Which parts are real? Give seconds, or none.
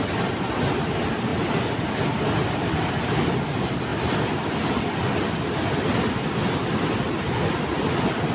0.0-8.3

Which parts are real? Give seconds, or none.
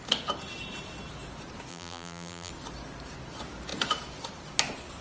0.0-1.7; 2.5-5.0